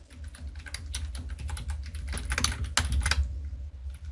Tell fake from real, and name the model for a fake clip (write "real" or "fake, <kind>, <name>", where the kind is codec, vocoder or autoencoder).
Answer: real